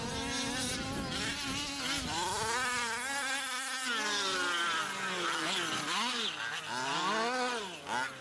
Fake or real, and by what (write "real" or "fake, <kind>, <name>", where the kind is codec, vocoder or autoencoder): real